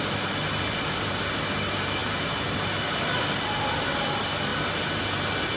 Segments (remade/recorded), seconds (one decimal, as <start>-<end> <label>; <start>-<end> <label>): 0.0-5.6 recorded